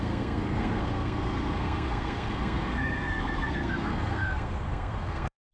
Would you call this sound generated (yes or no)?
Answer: yes